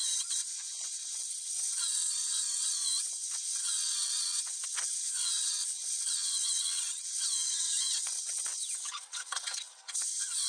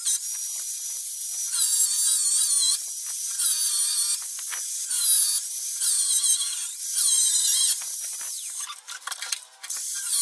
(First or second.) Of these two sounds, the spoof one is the first